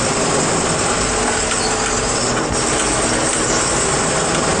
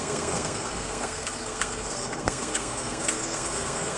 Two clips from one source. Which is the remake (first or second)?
second